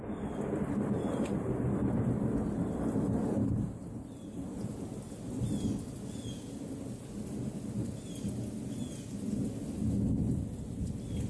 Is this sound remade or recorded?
recorded